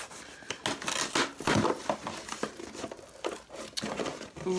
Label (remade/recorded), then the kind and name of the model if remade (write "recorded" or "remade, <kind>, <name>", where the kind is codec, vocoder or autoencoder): recorded